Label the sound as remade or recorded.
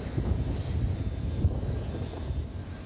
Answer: recorded